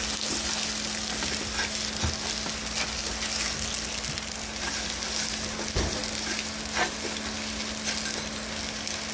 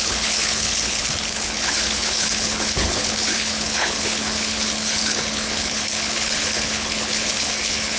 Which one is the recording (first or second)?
first